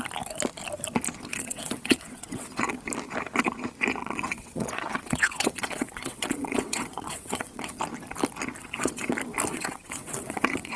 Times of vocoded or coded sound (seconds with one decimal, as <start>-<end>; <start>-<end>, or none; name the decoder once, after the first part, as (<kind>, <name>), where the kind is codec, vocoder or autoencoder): 1.3-2.7 (vocoder, WaveNeXt); 4.0-7.8; 8.6-9.1; 9.5-10.8

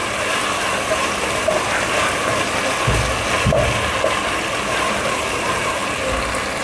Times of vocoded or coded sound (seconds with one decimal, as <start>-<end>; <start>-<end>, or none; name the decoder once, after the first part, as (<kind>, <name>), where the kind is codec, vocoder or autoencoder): 0.9-2.3 (vocoder, BigVGAN v2); 4.8-5.8